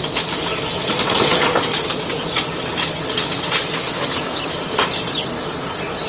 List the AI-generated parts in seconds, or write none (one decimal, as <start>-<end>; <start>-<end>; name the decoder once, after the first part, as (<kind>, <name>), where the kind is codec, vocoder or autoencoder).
none